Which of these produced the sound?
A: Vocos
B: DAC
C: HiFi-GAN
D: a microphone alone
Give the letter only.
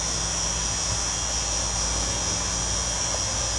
D